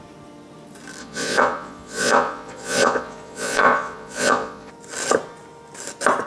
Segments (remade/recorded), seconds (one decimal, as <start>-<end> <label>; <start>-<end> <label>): 0.0-1.0 recorded; 1.0-4.7 remade; 4.7-6.3 recorded